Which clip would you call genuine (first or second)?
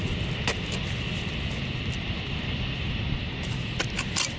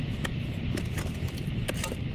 first